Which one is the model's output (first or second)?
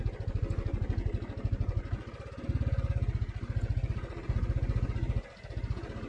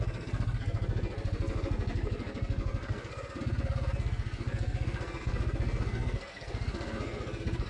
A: second